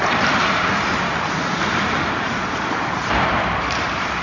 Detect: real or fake fake